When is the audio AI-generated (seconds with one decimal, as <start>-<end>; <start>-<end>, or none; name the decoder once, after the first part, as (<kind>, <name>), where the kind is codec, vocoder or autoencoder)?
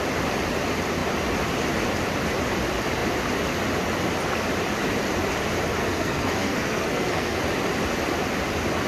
5.8-7.4 (codec, SNAC)